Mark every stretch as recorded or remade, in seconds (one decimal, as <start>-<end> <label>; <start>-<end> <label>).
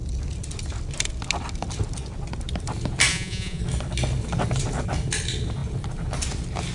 0.0-3.1 recorded; 3.1-3.6 remade; 3.6-6.7 recorded